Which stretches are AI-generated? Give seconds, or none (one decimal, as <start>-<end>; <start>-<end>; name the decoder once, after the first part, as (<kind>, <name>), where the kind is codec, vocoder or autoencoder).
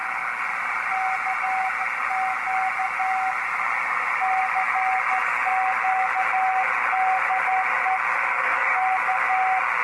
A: 8.3-8.8 (codec, DAC)